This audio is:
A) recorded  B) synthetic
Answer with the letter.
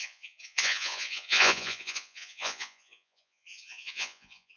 B